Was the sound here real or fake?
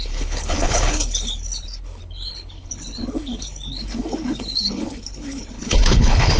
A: fake